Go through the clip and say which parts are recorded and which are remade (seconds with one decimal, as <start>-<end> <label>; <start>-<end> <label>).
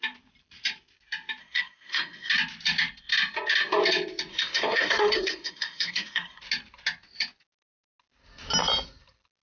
0.0-1.4 recorded; 1.4-2.3 remade; 2.3-4.3 recorded; 4.3-6.4 remade; 6.4-9.4 recorded